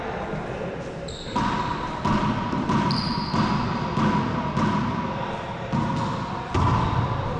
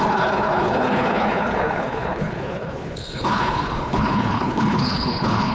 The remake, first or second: second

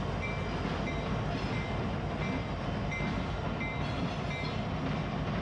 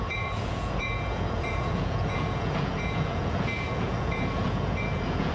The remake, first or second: second